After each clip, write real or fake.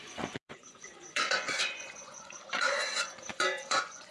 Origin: fake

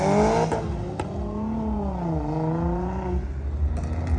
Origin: real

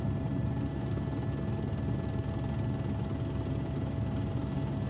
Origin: real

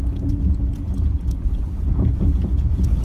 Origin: fake